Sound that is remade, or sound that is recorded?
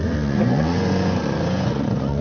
remade